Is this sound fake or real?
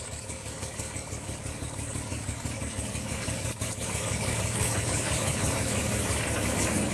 fake